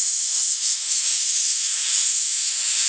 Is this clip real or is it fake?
fake